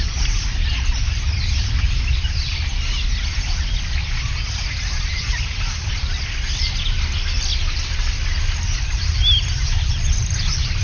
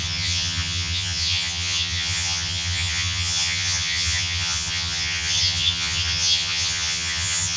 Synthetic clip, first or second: second